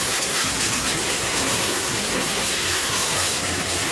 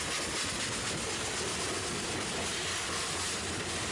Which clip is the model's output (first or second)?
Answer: first